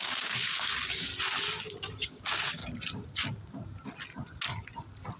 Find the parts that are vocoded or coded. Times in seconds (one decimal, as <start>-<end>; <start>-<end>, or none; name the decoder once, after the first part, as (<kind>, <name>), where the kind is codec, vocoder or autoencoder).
0.0-1.1 (codec, DAC); 2.0-2.6